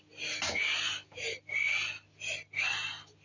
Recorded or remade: recorded